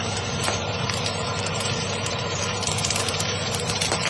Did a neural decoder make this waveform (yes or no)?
yes